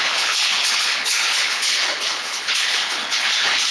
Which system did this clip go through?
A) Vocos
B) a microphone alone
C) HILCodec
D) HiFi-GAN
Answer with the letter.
C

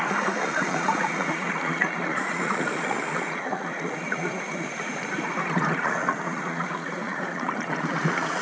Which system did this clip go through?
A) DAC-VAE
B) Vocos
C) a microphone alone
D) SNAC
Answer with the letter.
B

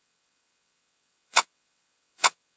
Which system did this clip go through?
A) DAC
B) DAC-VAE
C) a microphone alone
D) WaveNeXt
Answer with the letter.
D